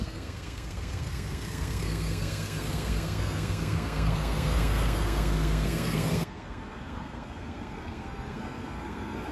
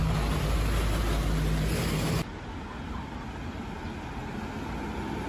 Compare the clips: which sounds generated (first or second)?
first